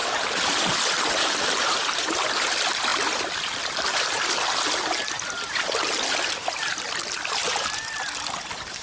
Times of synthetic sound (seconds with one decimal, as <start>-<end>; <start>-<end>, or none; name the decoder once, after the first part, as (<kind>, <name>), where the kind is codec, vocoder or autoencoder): none